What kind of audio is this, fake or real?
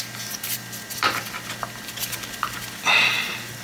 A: real